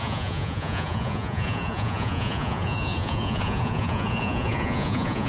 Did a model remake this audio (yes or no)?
yes